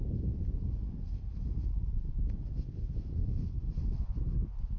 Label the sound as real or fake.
real